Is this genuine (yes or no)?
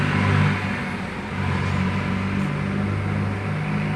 yes